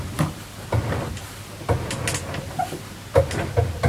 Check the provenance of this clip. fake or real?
real